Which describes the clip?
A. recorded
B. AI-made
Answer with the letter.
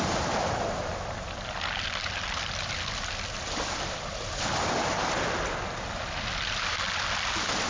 A